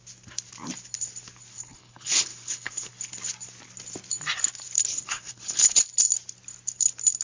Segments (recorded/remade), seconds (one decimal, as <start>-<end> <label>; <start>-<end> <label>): 0.0-1.5 recorded; 1.5-2.9 remade; 2.9-4.9 recorded; 4.9-5.8 remade; 5.8-7.2 recorded